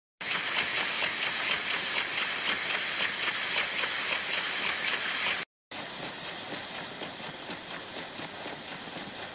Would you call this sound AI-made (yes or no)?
no